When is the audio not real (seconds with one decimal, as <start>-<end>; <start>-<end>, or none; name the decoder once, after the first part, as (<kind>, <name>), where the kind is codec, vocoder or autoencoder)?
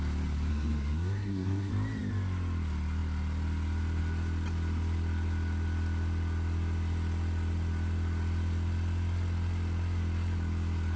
0.5-1.7 (codec, SNAC)